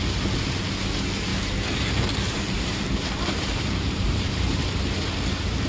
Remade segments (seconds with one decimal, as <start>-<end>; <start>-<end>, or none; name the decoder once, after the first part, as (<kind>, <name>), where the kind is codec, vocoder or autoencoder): 1.3-4.7 (vocoder, BigVGAN v2)